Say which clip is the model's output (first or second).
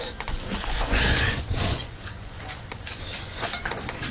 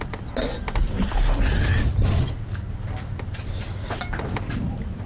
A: first